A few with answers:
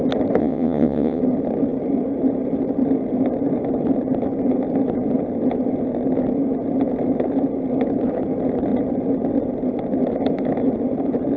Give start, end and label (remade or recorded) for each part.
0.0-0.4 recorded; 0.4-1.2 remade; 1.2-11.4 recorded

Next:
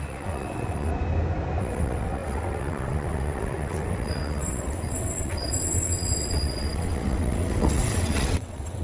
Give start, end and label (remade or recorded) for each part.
0.0-0.9 remade; 0.9-1.6 recorded; 1.6-8.8 remade